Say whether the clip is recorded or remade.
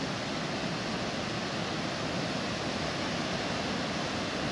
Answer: recorded